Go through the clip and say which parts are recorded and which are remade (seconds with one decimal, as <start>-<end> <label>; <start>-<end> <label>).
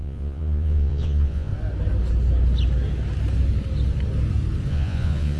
0.0-1.5 remade; 1.5-4.7 recorded; 4.7-5.4 remade